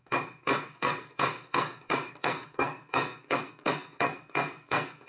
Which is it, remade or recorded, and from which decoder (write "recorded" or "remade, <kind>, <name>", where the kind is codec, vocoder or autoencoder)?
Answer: remade, codec, SNAC